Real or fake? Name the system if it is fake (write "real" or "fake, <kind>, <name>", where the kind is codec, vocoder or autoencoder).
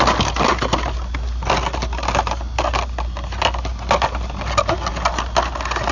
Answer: real